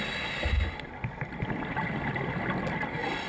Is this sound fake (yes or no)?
no